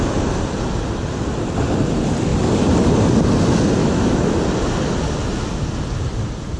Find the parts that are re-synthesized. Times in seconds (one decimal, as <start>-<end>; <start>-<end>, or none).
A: 3.8-4.4